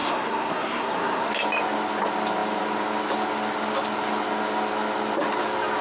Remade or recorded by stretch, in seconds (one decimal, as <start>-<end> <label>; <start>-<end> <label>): 0.0-1.3 remade; 1.3-5.8 recorded